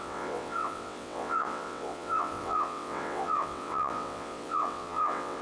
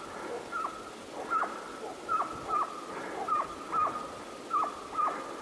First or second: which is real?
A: second